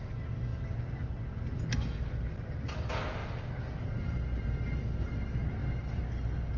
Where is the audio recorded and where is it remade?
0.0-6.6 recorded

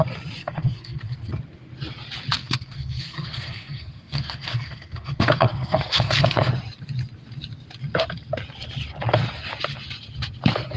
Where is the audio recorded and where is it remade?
0.0-0.4 recorded; 0.4-1.3 remade; 1.3-2.4 recorded; 2.4-6.5 remade; 6.5-10.8 recorded

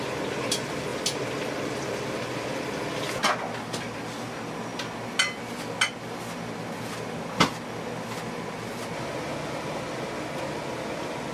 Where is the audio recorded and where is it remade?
0.0-11.3 recorded